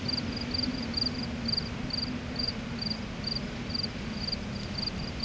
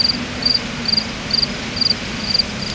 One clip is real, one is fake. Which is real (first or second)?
first